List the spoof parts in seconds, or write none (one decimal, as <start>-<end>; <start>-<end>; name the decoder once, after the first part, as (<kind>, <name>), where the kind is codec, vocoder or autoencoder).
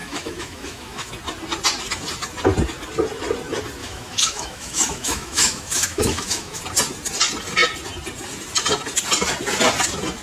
0.0-1.1 (autoencoder, DAC-VAE); 3.8-6.6